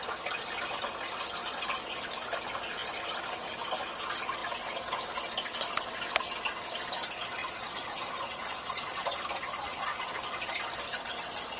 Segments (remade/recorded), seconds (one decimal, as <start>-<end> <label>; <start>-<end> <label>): 0.0-7.4 recorded; 7.4-10.0 remade; 10.0-11.6 recorded